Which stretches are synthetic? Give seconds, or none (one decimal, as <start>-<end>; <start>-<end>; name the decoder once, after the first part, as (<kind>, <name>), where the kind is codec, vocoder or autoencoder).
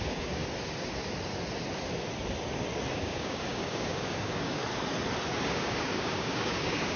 0.0-0.4 (codec, DAC); 2.9-4.6; 5.4-7.0